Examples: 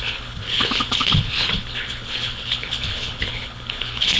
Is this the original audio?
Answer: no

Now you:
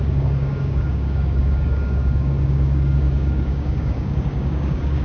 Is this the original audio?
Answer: no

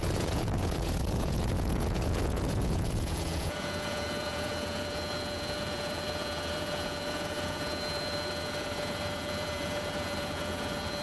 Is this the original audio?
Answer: no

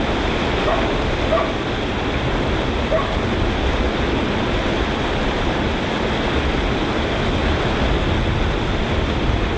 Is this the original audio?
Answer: yes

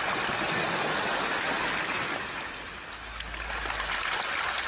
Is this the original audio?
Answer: yes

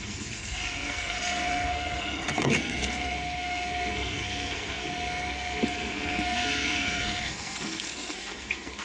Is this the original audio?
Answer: no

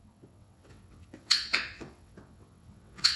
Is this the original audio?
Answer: no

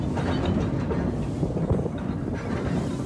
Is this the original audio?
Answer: yes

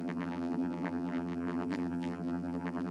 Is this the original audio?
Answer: no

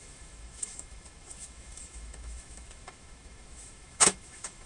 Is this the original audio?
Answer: no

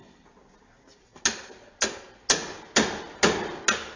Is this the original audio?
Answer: yes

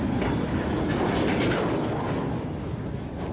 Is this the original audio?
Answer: yes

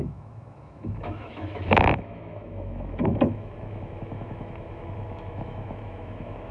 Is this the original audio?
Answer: no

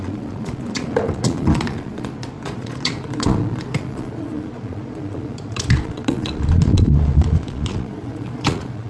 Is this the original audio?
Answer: no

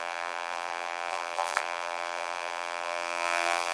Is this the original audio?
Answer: no